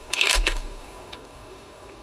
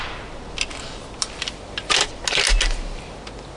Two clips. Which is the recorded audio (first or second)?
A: second